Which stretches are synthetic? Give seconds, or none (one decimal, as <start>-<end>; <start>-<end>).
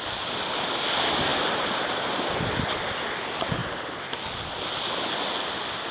none